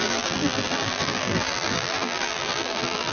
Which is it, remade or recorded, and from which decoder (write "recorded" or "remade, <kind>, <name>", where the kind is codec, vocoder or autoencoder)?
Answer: remade, vocoder, BigVGAN v2